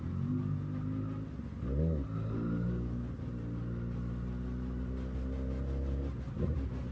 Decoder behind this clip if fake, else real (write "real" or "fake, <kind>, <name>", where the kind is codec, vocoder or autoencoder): real